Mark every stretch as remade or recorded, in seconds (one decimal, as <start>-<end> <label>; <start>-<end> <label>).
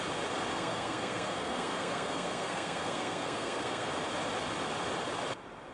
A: 0.0-0.5 recorded; 0.5-3.9 remade; 3.9-5.7 recorded